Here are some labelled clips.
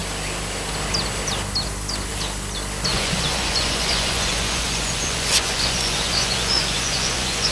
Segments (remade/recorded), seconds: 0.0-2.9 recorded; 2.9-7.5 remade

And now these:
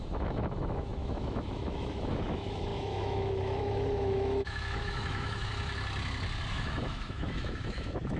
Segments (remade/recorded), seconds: 0.0-5.5 remade; 5.5-6.5 recorded; 6.5-8.2 remade

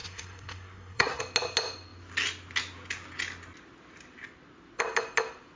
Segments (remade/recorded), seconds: 0.0-1.2 remade; 1.2-5.6 recorded